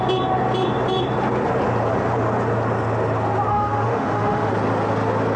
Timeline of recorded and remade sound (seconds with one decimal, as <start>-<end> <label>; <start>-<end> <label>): 0.0-3.5 recorded; 3.5-4.5 remade; 4.5-5.4 recorded